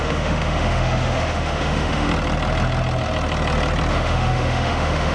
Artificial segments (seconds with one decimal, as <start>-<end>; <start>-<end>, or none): 0.0-2.1; 3.9-5.1